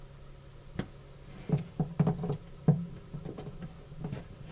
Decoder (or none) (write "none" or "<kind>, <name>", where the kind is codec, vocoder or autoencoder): none